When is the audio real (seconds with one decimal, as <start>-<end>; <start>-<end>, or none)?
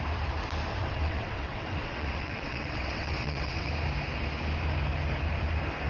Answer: 0.0-0.8; 3.7-5.9